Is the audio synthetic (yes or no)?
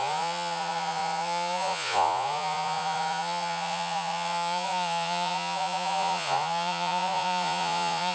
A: yes